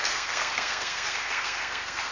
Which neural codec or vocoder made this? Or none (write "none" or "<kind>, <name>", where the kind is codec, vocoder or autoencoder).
codec, SNAC